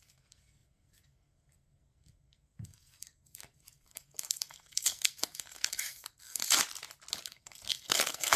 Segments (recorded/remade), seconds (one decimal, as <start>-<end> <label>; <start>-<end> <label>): 0.0-6.4 remade; 6.4-7.2 recorded; 7.2-8.4 remade